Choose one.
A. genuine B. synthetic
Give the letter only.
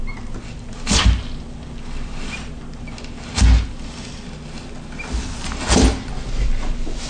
A